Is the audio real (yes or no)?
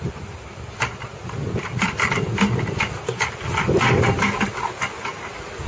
yes